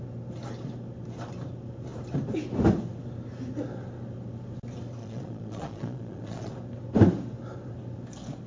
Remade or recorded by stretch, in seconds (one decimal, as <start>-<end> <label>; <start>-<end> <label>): 0.0-5.0 recorded; 5.0-6.5 remade; 6.5-8.5 recorded